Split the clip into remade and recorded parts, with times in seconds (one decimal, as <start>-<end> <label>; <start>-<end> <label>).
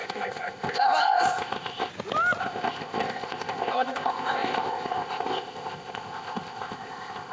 0.0-1.9 remade; 1.9-2.4 recorded; 2.4-7.3 remade